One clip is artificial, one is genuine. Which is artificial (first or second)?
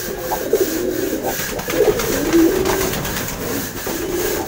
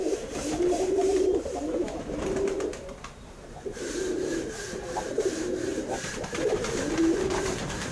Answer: second